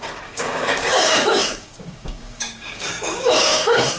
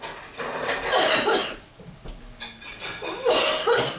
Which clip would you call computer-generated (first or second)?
first